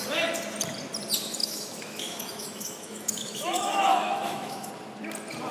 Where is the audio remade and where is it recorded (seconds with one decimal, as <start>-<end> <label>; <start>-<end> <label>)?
0.0-1.4 recorded; 1.4-4.7 remade; 4.7-5.5 recorded